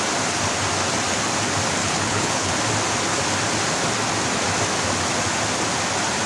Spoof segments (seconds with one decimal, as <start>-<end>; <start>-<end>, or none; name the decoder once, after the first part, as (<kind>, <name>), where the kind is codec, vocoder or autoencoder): 1.8-2.5 (codec, HILCodec)